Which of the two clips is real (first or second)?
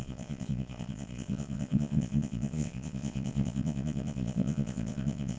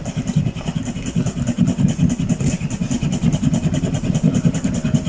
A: second